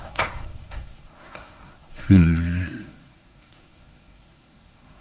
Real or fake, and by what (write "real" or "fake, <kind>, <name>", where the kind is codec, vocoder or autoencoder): fake, codec, SNAC